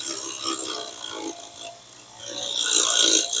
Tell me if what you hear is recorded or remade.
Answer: recorded